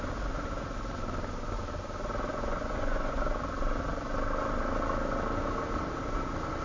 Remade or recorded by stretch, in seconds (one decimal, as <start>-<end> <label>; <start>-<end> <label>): 0.0-2.3 recorded; 2.3-3.2 remade; 3.2-6.6 recorded